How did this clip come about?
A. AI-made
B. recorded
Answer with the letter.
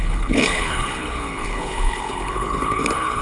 A